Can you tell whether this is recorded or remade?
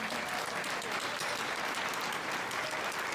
recorded